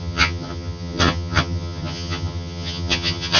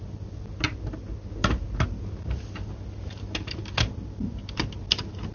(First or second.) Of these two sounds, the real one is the second